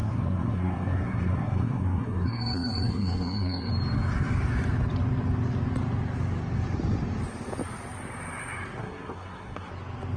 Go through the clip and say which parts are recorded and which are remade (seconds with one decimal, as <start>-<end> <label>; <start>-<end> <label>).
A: 0.0-3.7 remade; 3.7-8.8 recorded; 8.8-9.7 remade; 9.7-10.2 recorded